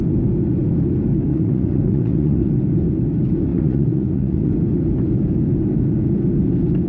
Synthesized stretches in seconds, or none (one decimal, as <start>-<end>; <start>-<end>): 1.3-2.5; 3.5-4.5